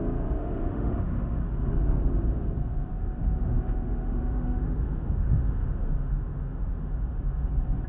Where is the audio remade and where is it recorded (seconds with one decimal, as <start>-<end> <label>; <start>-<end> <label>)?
0.0-0.4 recorded; 0.4-1.4 remade; 1.4-2.9 recorded; 2.9-7.5 remade; 7.5-7.9 recorded